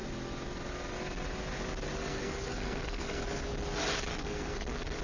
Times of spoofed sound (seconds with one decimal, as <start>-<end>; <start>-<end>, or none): 2.0-3.5; 4.1-5.0